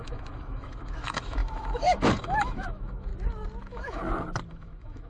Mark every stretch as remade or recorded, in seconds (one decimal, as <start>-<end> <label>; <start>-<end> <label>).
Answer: 0.0-3.1 remade; 3.1-3.6 recorded; 3.6-4.0 remade; 4.0-4.5 recorded; 4.5-5.1 remade